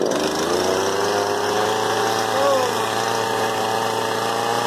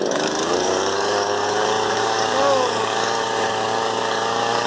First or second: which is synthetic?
second